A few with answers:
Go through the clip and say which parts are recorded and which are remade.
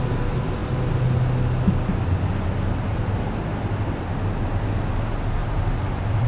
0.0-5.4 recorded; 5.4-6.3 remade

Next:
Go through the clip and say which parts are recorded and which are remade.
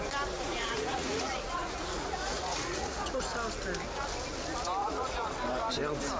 0.0-0.5 recorded; 0.5-3.2 remade; 3.2-4.8 recorded; 4.8-5.3 remade; 5.3-6.2 recorded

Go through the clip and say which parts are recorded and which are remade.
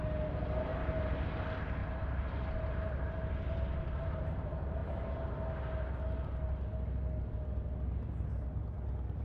0.0-0.7 recorded; 0.7-1.4 remade; 1.4-9.2 recorded